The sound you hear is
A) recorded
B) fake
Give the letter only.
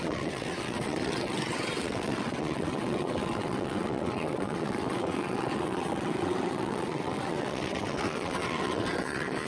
B